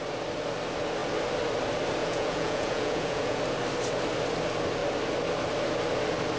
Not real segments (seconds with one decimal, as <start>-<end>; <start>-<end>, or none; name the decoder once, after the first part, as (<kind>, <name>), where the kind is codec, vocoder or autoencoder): 2.0-3.4 (vocoder, Vocos)